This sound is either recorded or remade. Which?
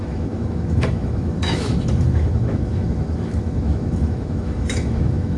remade